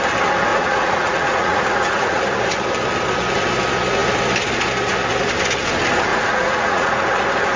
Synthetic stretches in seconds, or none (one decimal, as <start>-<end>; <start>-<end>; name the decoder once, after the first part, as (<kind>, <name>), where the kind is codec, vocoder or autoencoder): 0.5-2.2 (vocoder, Vocos); 6.1-7.0